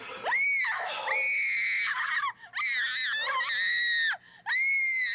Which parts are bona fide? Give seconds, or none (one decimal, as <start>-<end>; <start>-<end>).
0.0-5.1